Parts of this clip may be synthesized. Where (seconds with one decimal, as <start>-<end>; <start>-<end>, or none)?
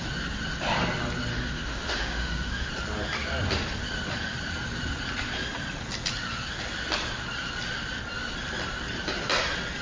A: 1.3-2.7